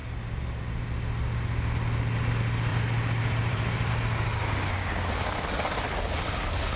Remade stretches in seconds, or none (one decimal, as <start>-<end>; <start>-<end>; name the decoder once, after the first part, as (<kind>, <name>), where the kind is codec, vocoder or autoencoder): 2.7-3.9 (vocoder, BigVGAN v2)